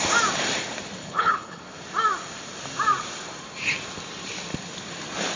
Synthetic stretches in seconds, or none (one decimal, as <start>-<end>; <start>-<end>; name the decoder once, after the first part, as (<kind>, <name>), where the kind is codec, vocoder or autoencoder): 1.0-1.6 (codec, HILCodec)